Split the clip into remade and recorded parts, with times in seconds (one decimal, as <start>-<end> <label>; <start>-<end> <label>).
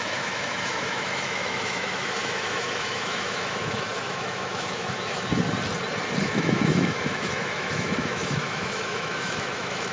0.0-5.3 remade; 5.3-6.2 recorded; 6.2-9.9 remade